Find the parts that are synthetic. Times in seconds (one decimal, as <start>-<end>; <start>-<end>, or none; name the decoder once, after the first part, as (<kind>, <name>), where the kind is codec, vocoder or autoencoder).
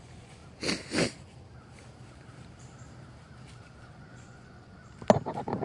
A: 0.0-0.4 (vocoder, Vocos); 3.8-4.8